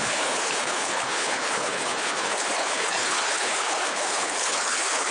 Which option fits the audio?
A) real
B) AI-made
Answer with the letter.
B